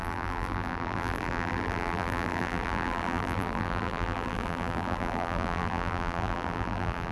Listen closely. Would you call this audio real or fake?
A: fake